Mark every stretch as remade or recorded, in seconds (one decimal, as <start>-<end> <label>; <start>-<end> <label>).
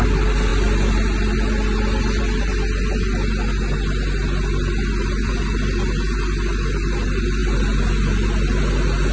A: 0.0-9.1 recorded